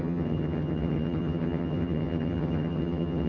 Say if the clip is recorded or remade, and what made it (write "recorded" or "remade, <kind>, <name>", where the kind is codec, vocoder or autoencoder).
remade, vocoder, HiFi-GAN